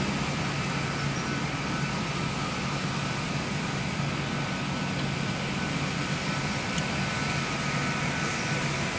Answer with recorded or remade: recorded